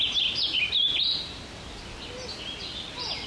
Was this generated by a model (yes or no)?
no